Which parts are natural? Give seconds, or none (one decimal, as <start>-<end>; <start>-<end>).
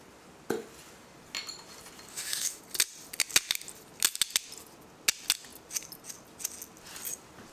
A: 0.0-2.1; 2.6-7.5